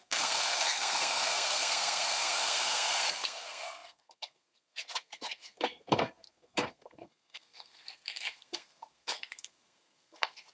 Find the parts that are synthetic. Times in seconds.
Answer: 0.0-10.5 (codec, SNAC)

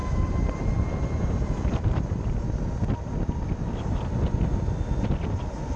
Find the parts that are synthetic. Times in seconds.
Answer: none

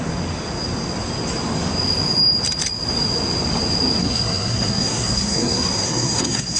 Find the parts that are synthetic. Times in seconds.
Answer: 4.0-6.6 (codec, SNAC)

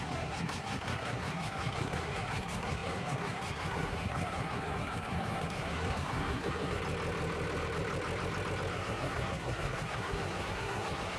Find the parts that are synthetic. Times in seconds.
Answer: 0.0-6.8 (codec, SNAC); 8.7-11.2

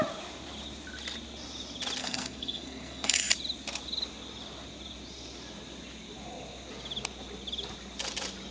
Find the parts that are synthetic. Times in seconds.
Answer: 2.0-3.3 (codec, SNAC)

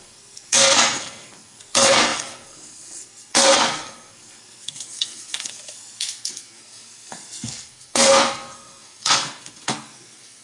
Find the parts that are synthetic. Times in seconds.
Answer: 0.0-10.4 (codec, SNAC)

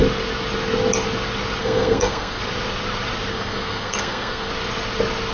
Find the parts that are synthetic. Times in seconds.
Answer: 1.6-2.4 (codec, SNAC); 3.3-4.5

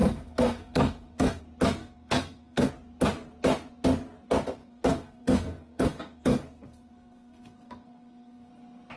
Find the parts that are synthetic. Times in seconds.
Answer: 0.0-1.4 (codec, SNAC); 1.8-2.7; 4.6-8.5